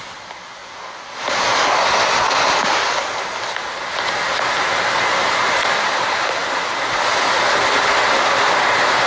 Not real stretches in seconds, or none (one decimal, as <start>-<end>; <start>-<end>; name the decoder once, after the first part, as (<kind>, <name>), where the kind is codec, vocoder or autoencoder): none